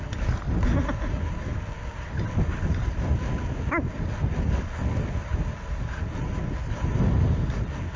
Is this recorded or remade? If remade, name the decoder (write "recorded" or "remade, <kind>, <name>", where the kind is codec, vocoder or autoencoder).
recorded